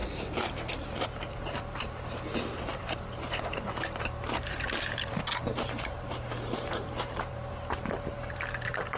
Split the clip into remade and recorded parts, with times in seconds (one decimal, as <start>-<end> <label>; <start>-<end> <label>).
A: 0.0-5.1 remade; 5.1-5.5 recorded; 5.5-7.3 remade; 7.3-9.0 recorded